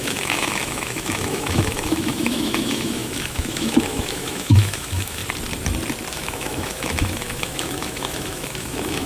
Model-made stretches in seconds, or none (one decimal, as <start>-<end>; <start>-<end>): 0.0-5.2; 6.1-9.1

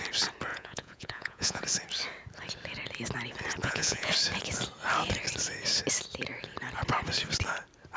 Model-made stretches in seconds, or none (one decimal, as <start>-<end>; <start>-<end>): 0.5-1.6; 3.6-4.1

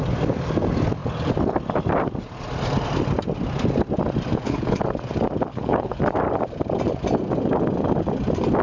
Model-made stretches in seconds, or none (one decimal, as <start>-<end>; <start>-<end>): 4.3-4.8; 5.5-6.0